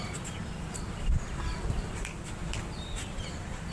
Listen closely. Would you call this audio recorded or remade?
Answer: recorded